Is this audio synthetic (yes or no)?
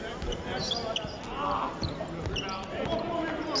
no